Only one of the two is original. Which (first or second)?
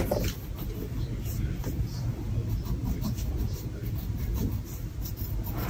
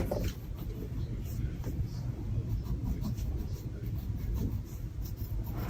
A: first